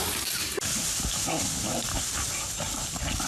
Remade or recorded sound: recorded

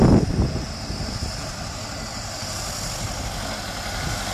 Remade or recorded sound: recorded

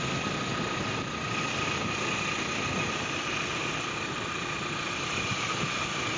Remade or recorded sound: recorded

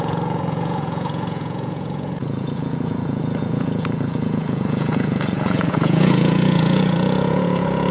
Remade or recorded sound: remade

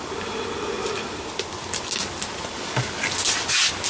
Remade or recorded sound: recorded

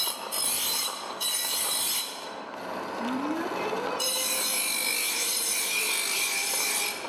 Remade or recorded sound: remade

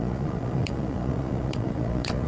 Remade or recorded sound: remade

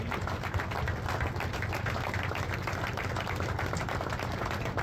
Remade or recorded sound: recorded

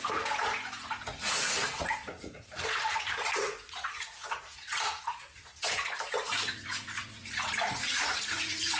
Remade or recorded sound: remade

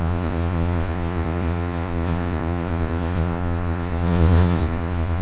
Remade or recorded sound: remade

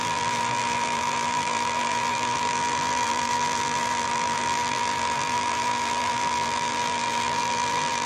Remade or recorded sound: remade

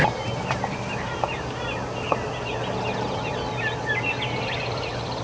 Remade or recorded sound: recorded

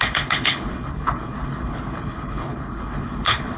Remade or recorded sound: remade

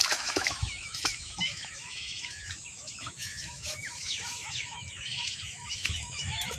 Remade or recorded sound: remade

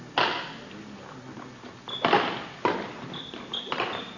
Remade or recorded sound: recorded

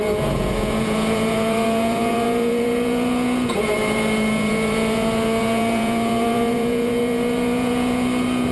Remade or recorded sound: remade